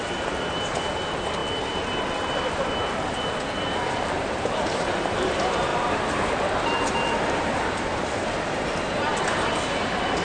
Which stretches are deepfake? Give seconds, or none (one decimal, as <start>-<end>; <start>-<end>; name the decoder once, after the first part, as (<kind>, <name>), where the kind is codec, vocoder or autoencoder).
0.0-1.4 (vocoder, BigVGAN v2); 3.3-9.1